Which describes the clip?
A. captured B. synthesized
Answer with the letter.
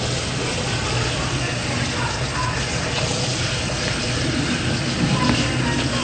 A